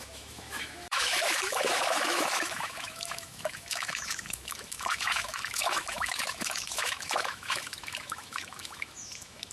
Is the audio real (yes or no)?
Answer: no